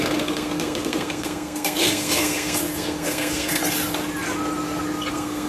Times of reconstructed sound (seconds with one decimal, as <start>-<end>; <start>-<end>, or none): 0.0-3.6; 5.1-5.5